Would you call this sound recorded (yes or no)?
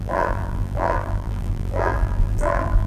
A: no